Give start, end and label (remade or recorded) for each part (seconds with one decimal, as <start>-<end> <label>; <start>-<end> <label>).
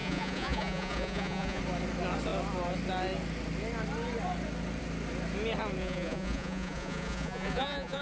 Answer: 0.0-1.6 remade; 1.6-5.8 recorded; 5.8-8.0 remade